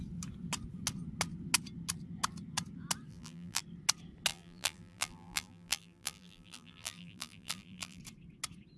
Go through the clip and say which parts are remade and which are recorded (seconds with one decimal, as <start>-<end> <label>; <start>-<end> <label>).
0.0-3.1 recorded; 3.1-3.6 remade; 3.6-4.3 recorded; 4.3-8.0 remade; 8.0-8.8 recorded